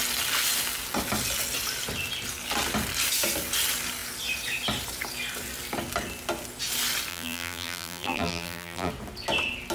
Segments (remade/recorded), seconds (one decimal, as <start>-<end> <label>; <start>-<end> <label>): 0.0-7.1 recorded; 7.1-8.9 remade; 8.9-9.7 recorded